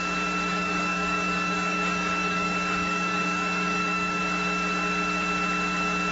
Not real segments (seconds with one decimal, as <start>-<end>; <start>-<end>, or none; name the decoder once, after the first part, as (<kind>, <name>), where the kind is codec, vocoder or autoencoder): 0.5-4.2 (codec, DAC)